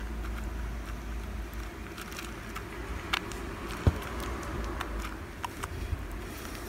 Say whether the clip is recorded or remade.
recorded